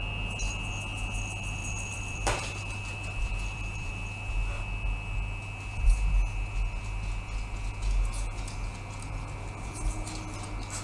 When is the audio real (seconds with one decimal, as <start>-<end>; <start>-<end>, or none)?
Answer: 0.0-1.6; 3.9-10.8